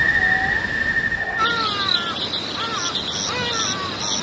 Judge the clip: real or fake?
real